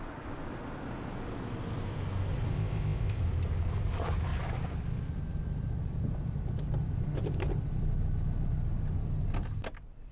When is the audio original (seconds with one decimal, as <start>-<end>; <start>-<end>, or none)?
0.0-2.5; 3.2-10.1